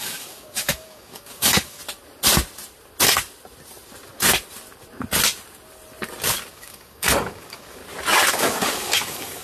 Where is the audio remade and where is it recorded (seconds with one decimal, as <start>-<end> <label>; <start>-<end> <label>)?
0.0-1.8 remade; 1.8-6.5 recorded; 6.5-7.8 remade; 7.8-8.3 recorded; 8.3-9.4 remade